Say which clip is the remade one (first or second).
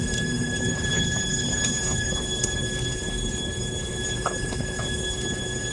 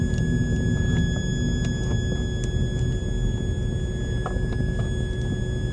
first